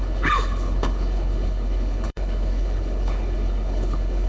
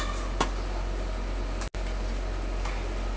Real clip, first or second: second